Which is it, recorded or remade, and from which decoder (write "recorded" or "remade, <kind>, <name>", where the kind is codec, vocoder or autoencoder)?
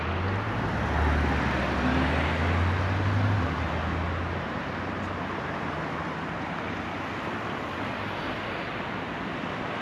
recorded